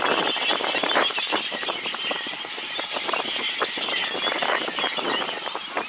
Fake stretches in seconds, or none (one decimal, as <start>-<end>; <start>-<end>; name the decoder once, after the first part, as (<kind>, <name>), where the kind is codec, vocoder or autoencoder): 0.5-2.5 (vocoder, BigVGAN v2); 4.0-5.5